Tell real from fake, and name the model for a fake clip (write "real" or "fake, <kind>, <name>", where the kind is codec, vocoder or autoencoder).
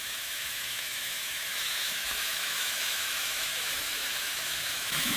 fake, autoencoder, DAC-VAE